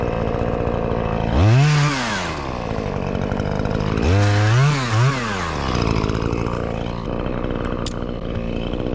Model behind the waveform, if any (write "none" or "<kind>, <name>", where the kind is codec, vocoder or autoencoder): none